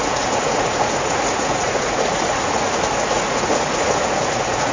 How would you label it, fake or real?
fake